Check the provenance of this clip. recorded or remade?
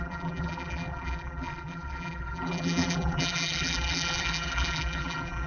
remade